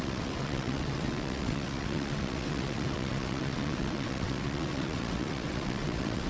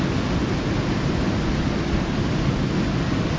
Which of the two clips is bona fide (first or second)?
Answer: second